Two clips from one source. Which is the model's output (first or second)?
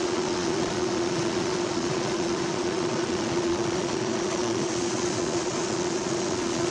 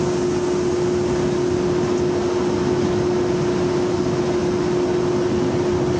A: first